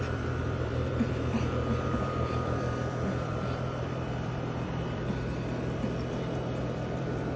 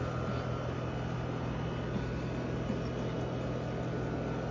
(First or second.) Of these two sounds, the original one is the second